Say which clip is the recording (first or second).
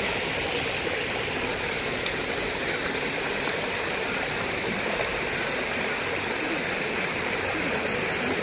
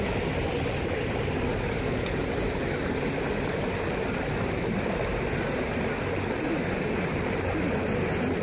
second